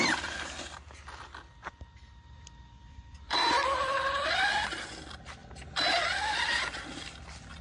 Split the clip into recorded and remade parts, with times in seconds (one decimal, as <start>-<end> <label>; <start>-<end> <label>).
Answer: 0.0-7.6 recorded